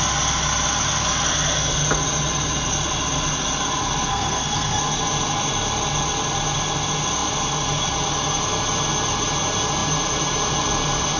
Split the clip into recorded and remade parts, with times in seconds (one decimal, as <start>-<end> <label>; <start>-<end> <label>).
0.0-4.1 recorded; 4.1-4.8 remade; 4.8-11.2 recorded